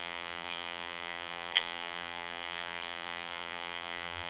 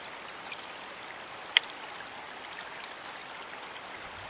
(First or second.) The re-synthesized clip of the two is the first